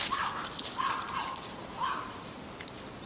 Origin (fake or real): real